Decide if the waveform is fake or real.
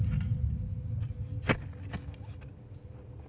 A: real